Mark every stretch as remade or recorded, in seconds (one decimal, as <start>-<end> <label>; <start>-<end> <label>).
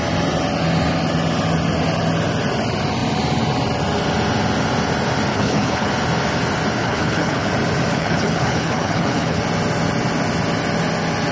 0.0-5.3 recorded; 5.3-5.9 remade; 5.9-6.8 recorded; 6.8-7.5 remade; 7.5-7.9 recorded; 7.9-9.4 remade; 9.4-11.3 recorded